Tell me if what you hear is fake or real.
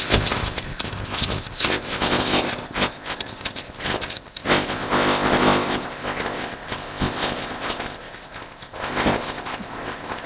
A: fake